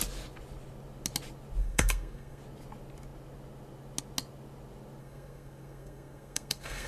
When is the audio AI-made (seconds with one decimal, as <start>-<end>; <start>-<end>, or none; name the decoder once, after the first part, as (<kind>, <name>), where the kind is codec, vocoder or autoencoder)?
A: 1.6-2.4 (codec, SNAC); 5.0-6.9